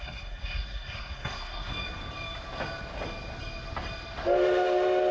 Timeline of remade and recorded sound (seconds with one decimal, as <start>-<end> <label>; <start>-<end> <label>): 0.0-1.7 remade; 1.7-5.1 recorded